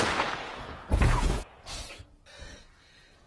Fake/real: fake